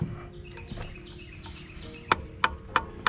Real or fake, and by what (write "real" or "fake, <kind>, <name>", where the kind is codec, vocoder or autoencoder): real